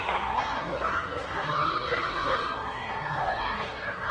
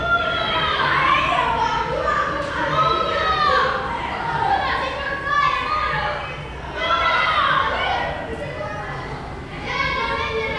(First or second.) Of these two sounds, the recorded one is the second